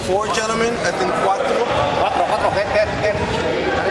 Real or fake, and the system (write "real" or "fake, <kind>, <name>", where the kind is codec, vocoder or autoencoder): real